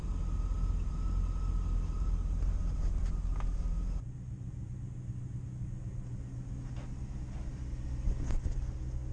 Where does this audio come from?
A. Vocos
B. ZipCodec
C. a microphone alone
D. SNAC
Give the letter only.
C